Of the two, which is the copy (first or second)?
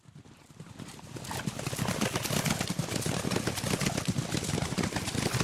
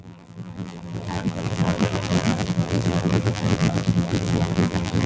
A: second